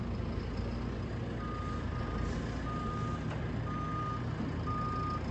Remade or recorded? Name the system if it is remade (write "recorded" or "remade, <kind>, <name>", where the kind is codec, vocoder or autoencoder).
recorded